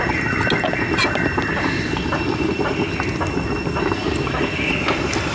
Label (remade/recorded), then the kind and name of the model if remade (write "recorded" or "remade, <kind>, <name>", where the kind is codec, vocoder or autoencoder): recorded